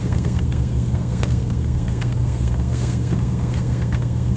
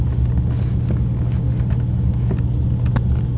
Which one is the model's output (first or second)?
first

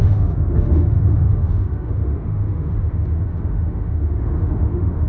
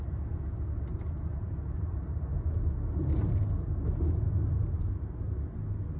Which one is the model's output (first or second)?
first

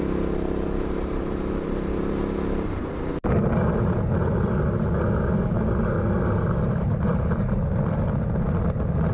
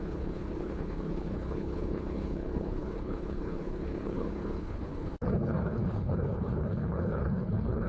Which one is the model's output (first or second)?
second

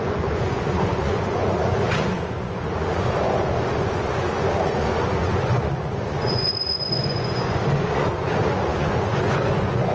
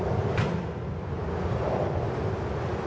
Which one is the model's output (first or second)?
first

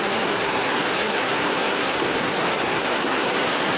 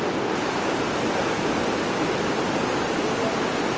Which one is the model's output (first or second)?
first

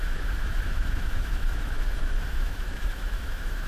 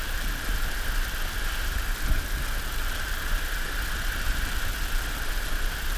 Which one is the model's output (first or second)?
first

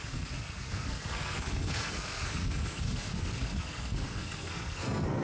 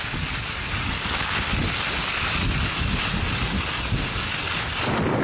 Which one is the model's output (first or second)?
first